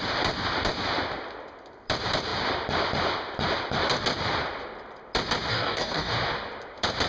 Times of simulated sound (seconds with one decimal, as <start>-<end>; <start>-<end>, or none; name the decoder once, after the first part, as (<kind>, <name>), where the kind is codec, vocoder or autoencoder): 5.5-6.1 (codec, DAC)